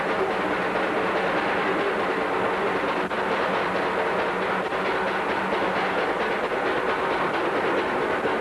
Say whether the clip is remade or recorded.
recorded